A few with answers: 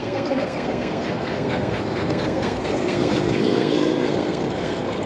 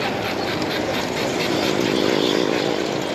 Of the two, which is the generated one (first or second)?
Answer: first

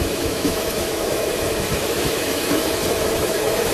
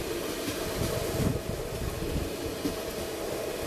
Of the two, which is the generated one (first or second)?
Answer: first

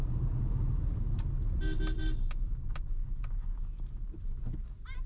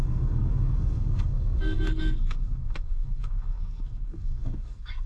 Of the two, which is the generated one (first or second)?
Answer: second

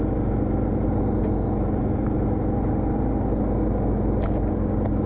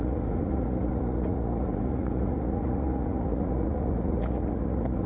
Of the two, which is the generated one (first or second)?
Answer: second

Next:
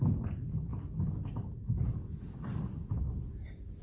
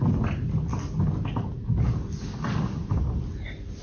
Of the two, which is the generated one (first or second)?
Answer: first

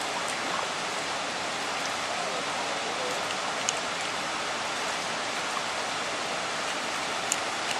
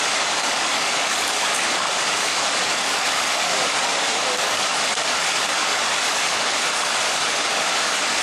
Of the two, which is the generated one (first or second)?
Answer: second